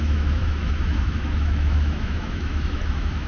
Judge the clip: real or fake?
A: fake